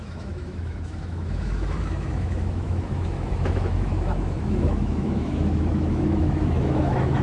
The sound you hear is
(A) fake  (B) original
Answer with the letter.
A